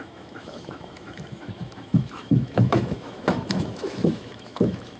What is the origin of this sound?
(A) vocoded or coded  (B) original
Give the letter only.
A